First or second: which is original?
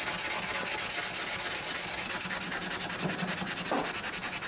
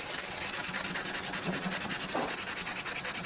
first